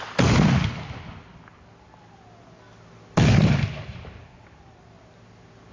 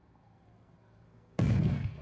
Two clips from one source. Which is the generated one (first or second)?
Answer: second